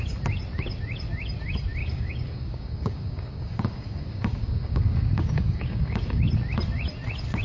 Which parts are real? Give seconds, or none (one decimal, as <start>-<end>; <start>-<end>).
0.0-1.8; 6.2-7.4